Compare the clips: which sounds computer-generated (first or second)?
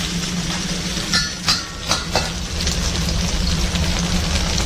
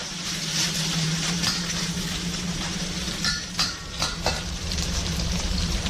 second